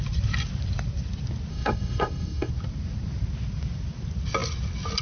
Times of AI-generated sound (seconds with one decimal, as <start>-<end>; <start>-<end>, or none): 1.5-2.5